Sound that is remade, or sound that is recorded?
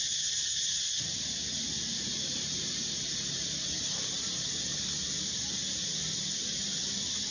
recorded